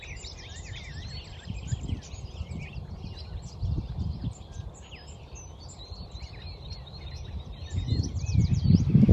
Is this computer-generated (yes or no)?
yes